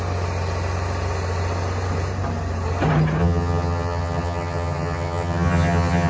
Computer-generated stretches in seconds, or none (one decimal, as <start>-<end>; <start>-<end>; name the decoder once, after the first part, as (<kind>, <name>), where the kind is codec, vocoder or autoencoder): 3.2-6.1 (vocoder, HiFi-GAN)

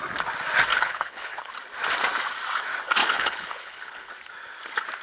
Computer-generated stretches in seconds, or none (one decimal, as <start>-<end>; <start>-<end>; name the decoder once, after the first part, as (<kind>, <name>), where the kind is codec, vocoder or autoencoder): 0.7-1.5 (codec, HILCodec); 3.0-4.1

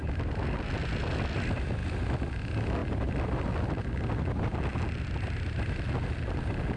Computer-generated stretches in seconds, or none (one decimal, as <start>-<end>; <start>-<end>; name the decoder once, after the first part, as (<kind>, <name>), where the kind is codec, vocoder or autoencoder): 2.8-3.9 (vocoder, BigVGAN v2)